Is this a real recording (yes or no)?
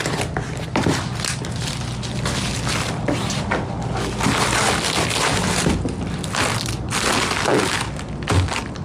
yes